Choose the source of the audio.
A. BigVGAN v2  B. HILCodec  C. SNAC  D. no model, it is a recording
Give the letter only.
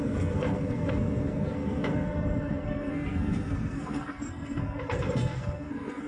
C